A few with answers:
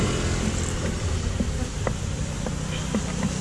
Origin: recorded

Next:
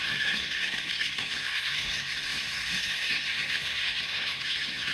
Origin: remade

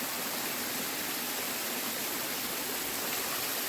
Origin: recorded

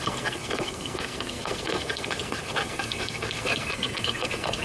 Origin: remade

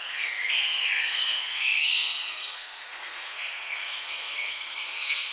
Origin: remade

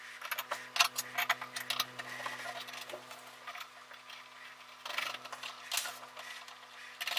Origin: recorded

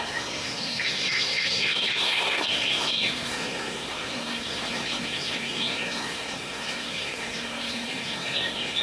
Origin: remade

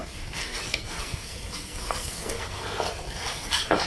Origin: remade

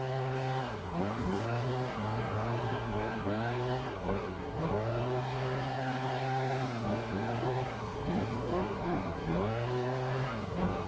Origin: remade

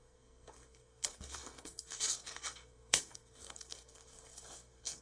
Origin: remade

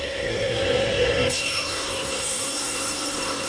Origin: remade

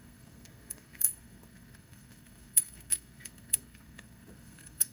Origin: remade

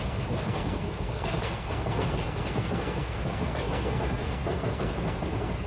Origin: remade